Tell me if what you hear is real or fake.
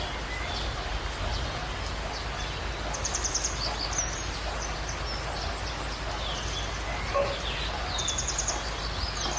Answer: real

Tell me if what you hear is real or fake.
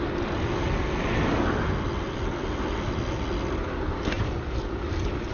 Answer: real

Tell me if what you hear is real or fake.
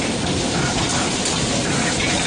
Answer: real